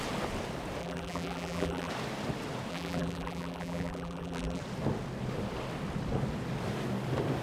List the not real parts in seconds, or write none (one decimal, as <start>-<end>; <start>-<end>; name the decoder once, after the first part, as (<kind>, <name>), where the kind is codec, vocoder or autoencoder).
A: 0.8-1.9 (vocoder, BigVGAN v2); 2.7-4.6